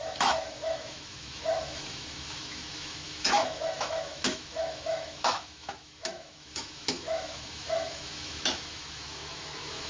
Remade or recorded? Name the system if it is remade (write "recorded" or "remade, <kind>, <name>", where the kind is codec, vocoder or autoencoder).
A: remade, autoencoder, DAC-VAE